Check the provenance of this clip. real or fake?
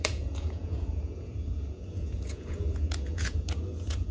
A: fake